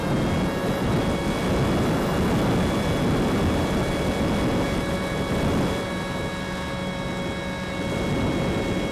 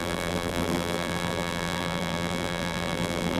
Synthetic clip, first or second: second